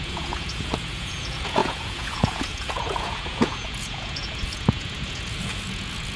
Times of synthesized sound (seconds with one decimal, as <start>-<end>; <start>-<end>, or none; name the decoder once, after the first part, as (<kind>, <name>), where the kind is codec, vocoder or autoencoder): 0.0-6.2 (vocoder, Vocos)